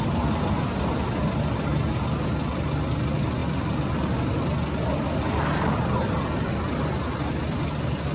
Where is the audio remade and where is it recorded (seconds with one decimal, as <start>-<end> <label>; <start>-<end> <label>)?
0.0-8.1 recorded